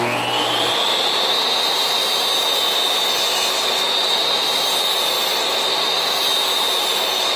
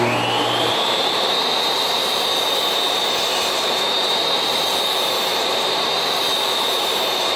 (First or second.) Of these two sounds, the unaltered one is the first